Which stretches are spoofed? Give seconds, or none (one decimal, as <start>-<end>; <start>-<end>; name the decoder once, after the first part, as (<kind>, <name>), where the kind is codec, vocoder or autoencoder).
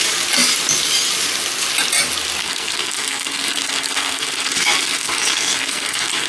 2.4-6.3 (codec, SNAC)